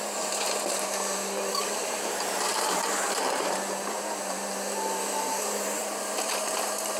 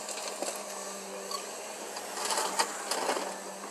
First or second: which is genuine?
second